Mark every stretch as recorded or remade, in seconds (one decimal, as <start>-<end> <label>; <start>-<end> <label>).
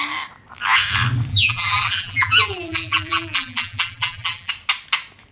0.0-1.3 recorded; 1.3-4.5 remade; 4.5-5.3 recorded